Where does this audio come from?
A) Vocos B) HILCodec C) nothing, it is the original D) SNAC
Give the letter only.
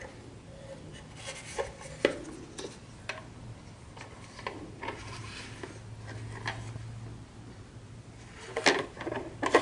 C